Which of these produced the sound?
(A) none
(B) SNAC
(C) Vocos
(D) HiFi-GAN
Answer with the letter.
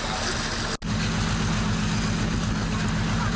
A